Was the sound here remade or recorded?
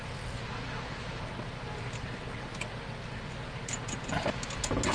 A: recorded